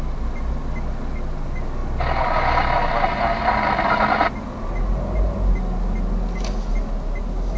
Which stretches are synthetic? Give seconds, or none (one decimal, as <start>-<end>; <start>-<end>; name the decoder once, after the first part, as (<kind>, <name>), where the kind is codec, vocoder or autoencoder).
none